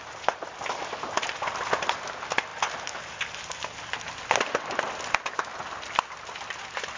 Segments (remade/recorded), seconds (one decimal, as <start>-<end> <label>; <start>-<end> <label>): 0.0-7.0 recorded